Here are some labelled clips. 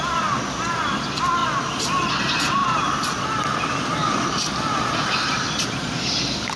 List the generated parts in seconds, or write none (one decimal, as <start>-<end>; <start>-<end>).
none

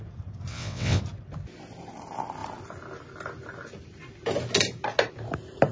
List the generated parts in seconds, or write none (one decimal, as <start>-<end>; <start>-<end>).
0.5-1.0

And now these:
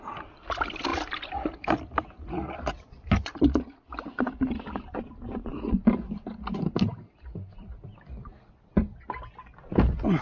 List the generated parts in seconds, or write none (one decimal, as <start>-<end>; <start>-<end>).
0.0-5.5; 7.1-8.3; 9.4-10.2

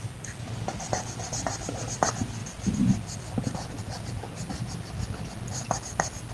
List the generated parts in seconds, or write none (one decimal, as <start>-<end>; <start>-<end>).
none

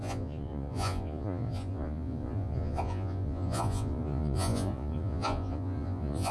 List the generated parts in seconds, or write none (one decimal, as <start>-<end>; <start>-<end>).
0.0-6.3

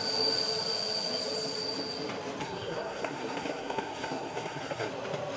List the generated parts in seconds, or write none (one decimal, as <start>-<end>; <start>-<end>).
2.4-4.9

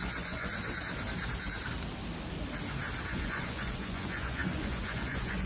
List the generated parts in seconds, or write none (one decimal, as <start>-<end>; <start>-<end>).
0.0-0.5; 3.1-5.5